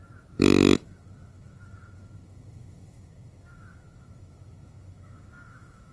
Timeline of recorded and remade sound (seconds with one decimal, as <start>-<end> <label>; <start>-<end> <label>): 0.0-5.9 remade